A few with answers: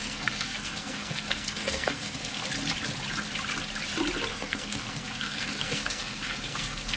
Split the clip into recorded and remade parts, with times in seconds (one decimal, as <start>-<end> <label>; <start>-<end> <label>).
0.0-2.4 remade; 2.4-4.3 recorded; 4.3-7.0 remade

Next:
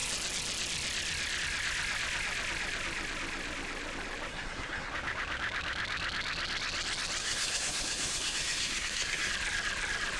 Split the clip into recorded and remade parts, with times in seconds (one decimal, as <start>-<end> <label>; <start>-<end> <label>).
0.0-4.3 recorded; 4.3-4.9 remade; 4.9-7.2 recorded; 7.2-9.3 remade; 9.3-10.2 recorded

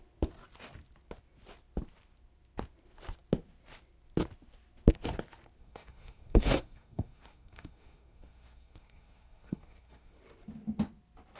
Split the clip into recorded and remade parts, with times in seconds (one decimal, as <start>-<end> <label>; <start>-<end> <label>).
0.0-5.6 recorded; 5.6-10.2 remade; 10.2-11.4 recorded

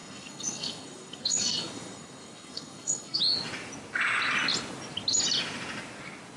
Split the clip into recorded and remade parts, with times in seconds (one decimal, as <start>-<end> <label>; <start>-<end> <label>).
0.0-3.2 remade; 3.2-6.4 recorded

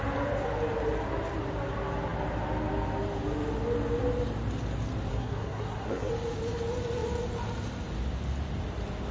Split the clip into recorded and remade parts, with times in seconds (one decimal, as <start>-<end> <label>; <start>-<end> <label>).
0.0-5.1 recorded; 5.1-6.1 remade; 6.1-9.1 recorded

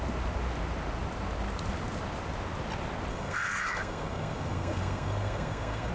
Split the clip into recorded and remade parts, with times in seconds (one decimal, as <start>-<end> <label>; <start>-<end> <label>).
0.0-3.1 recorded; 3.1-5.9 remade

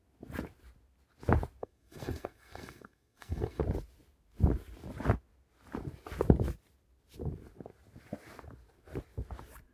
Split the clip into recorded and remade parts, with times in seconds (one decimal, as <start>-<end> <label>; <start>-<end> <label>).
0.0-1.6 recorded; 1.6-3.6 remade; 3.6-9.7 recorded